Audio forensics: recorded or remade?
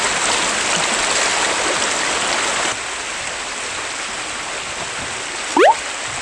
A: recorded